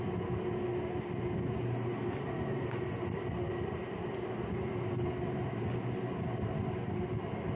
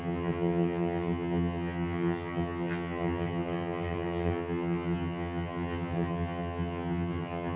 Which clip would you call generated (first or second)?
second